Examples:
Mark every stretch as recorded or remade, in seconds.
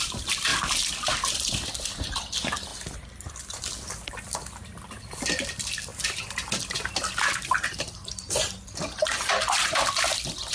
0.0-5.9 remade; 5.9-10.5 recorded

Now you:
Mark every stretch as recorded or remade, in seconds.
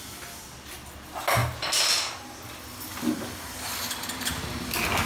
0.0-5.1 recorded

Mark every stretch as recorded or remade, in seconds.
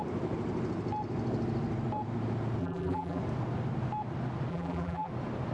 0.0-2.6 recorded; 2.6-3.2 remade; 3.2-4.5 recorded; 4.5-5.1 remade; 5.1-5.5 recorded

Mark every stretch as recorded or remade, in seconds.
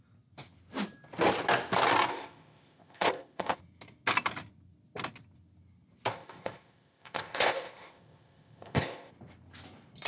0.0-2.1 recorded; 2.1-3.6 remade; 3.6-6.1 recorded; 6.1-9.1 remade; 9.1-10.1 recorded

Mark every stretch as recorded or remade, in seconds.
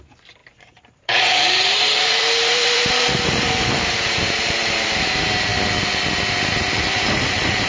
0.0-5.5 remade; 5.5-7.1 recorded; 7.1-7.7 remade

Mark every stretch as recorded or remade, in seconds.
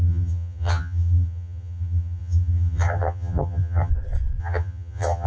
0.0-3.9 remade; 3.9-4.4 recorded; 4.4-5.3 remade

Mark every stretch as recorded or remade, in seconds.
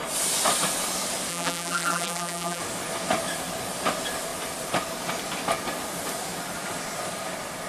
0.0-1.3 recorded; 1.3-2.6 remade; 2.6-7.7 recorded